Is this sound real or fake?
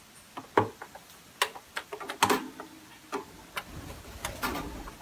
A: real